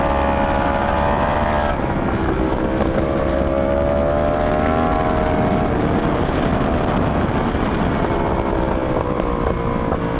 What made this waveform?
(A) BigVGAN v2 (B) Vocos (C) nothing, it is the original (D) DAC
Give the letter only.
C